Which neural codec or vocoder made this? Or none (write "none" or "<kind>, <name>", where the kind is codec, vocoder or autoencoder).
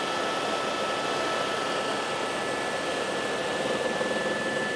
none